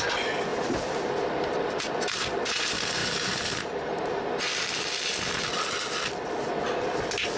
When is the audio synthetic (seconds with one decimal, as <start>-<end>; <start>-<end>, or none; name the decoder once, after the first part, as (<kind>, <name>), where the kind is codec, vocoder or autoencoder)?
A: 0.5-1.1 (vocoder, BigVGAN v2); 3.0-4.3